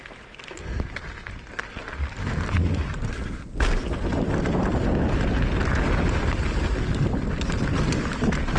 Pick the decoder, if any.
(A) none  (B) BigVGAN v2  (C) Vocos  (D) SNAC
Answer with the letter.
A